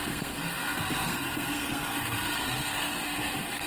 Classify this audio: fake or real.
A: fake